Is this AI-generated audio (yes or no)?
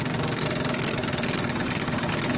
no